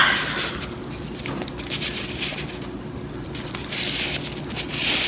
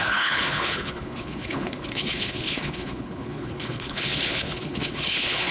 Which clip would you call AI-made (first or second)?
second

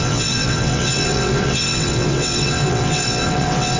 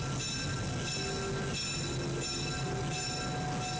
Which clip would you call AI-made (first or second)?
first